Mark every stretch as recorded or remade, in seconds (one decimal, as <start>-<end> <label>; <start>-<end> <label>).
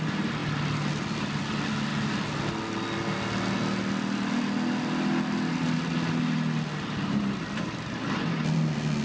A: 0.0-9.0 recorded